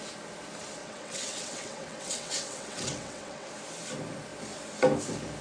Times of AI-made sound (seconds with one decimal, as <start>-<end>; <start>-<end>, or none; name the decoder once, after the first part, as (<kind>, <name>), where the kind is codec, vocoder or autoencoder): 0.8-3.5 (vocoder, WaveNeXt)